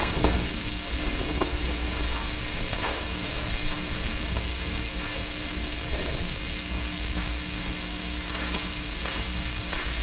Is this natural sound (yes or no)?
no